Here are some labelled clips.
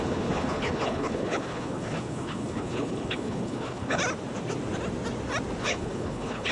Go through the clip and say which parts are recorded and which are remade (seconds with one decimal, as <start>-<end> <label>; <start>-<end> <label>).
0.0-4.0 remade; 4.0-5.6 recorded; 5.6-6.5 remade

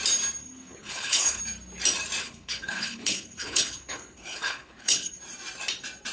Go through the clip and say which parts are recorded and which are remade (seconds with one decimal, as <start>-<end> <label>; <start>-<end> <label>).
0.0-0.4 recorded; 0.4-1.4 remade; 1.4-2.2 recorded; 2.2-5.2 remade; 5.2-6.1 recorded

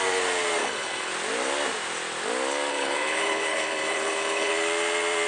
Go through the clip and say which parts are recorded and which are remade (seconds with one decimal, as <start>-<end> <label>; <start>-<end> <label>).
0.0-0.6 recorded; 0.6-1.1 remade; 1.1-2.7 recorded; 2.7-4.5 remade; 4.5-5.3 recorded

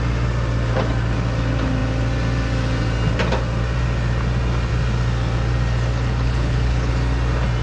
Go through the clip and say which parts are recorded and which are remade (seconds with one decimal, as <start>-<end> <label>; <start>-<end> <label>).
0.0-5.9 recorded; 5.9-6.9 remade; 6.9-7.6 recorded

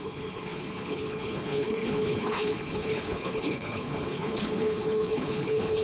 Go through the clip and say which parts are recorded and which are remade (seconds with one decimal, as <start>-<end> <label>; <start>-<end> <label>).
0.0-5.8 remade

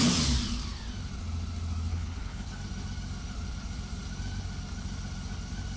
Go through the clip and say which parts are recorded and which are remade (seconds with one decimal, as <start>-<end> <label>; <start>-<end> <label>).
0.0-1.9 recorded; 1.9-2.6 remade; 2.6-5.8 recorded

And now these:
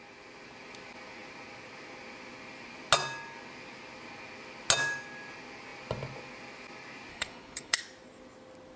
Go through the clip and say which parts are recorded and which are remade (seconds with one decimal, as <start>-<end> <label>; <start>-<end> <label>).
0.0-7.1 recorded; 7.1-7.8 remade; 7.8-8.8 recorded

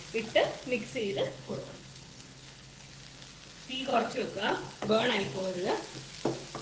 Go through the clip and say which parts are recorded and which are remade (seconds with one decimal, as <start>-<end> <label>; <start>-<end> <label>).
0.0-1.0 recorded; 1.0-2.9 remade; 2.9-3.9 recorded; 3.9-5.7 remade; 5.7-6.6 recorded